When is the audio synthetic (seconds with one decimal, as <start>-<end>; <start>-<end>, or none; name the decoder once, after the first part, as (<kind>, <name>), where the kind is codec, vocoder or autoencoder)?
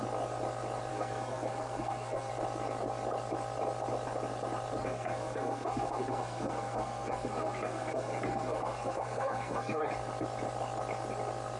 0.9-2.3 (codec, SNAC); 4.8-9.8